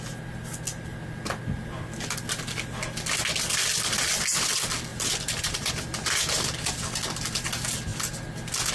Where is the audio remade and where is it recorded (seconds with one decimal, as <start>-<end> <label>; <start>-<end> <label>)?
0.0-4.9 recorded; 4.9-5.7 remade; 5.7-8.7 recorded